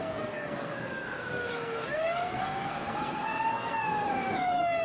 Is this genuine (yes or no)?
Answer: no